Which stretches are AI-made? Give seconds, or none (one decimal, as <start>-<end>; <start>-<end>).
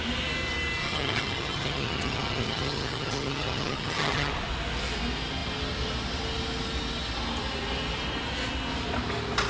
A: 0.8-4.3